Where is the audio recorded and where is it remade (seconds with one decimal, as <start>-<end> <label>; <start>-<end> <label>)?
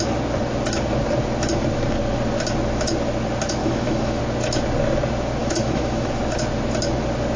0.0-3.6 recorded; 3.6-4.2 remade; 4.2-5.4 recorded; 5.4-6.2 remade; 6.2-7.4 recorded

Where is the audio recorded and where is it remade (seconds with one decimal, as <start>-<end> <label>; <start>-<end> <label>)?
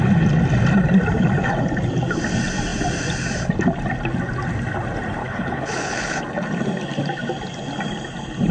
0.0-5.2 recorded; 5.2-6.2 remade; 6.2-8.5 recorded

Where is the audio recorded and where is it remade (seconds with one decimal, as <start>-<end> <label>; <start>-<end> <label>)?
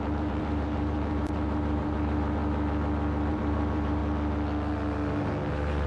0.0-2.4 remade; 2.4-3.3 recorded; 3.3-4.0 remade; 4.0-5.5 recorded; 5.5-5.9 remade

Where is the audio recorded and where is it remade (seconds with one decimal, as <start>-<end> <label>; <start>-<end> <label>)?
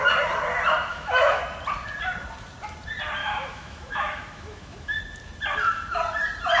0.0-0.9 recorded; 0.9-1.4 remade; 1.4-3.2 recorded; 3.2-5.0 remade; 5.0-6.6 recorded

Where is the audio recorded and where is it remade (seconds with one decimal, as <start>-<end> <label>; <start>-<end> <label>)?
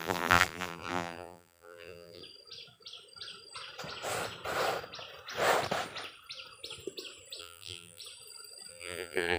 0.0-2.2 remade; 2.2-7.4 recorded; 7.4-8.0 remade; 8.0-8.7 recorded; 8.7-9.4 remade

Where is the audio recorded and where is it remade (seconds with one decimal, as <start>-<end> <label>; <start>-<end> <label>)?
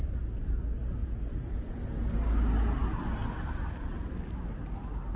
0.0-1.0 recorded; 1.0-2.1 remade; 2.1-5.2 recorded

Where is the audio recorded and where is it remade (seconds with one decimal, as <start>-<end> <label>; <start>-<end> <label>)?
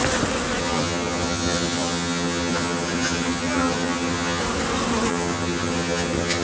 0.0-0.6 recorded; 0.6-4.4 remade; 4.4-5.1 recorded; 5.1-6.4 remade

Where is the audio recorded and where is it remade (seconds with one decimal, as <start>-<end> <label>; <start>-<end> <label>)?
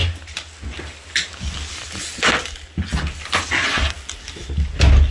0.0-5.1 recorded